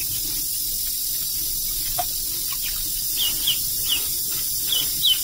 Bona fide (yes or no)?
yes